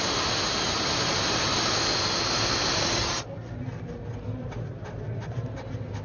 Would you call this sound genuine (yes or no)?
yes